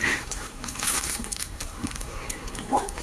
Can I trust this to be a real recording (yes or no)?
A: no